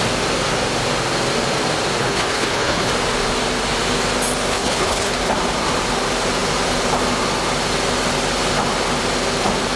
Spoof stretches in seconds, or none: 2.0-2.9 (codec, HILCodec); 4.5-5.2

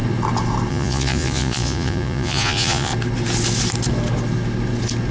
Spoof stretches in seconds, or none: 0.7-2.9 (vocoder, Vocos)

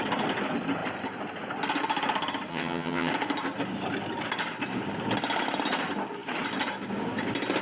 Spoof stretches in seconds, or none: 2.5-3.1 (vocoder, HiFi-GAN)

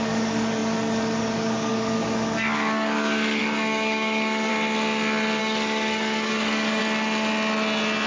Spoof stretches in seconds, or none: 0.0-4.5 (codec, DAC); 5.4-6.8

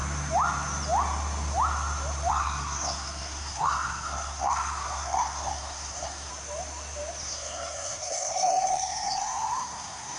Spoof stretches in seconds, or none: 2.3-6.3 (codec, SNAC); 7.2-10.2

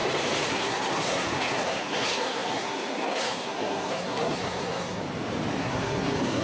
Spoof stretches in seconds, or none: 0.5-5.0 (codec, SNAC); 5.6-6.4

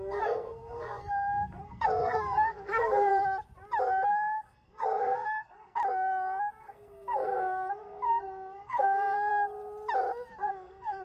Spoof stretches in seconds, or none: 0.0-3.1 (codec, SNAC); 4.1-5.8; 6.6-9.3; 10.5-11.0

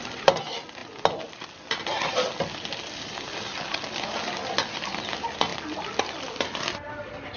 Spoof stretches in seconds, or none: none